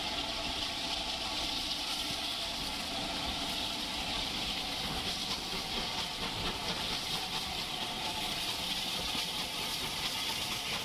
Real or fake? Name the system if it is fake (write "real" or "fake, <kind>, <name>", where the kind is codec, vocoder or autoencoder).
real